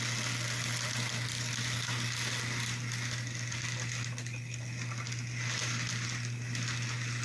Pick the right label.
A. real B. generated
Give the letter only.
A